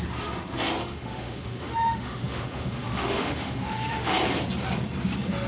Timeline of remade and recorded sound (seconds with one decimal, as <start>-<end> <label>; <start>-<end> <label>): 0.0-0.8 recorded; 0.8-4.1 remade; 4.1-5.5 recorded